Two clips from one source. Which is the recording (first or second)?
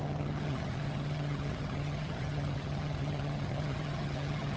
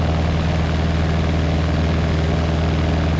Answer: second